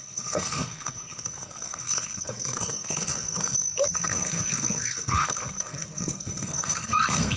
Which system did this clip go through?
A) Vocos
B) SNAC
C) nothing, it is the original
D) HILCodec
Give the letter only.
B